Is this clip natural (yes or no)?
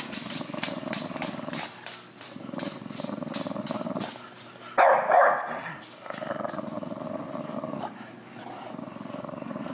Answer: yes